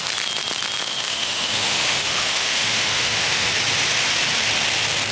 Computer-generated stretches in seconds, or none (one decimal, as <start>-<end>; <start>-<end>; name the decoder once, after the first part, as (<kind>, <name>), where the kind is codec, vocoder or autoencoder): 0.8-3.5 (autoencoder, DAC-VAE)